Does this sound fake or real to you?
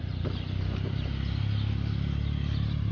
real